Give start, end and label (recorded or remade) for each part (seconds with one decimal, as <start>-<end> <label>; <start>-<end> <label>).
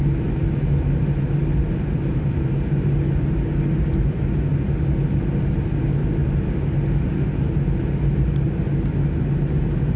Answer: 0.0-10.0 recorded